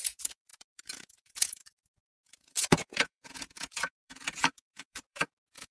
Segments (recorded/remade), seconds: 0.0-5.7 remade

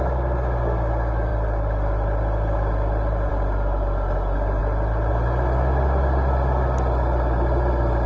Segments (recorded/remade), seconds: 0.0-1.3 recorded; 1.3-3.3 remade; 3.3-4.6 recorded; 4.6-5.1 remade; 5.1-8.1 recorded

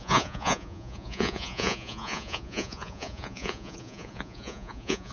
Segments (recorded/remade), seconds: 0.0-5.1 remade

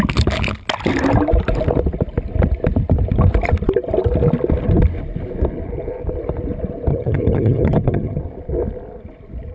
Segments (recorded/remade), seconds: 0.0-6.9 recorded; 6.9-8.2 remade; 8.2-9.5 recorded